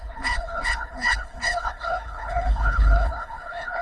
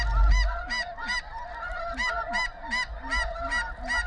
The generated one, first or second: first